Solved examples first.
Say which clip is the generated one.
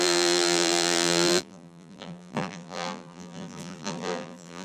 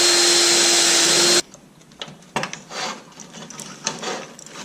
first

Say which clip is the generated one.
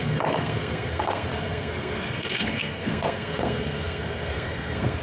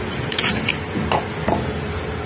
first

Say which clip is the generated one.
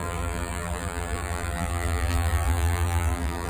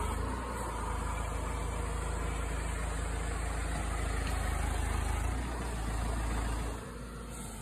first